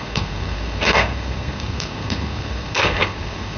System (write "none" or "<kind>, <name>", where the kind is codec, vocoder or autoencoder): codec, SNAC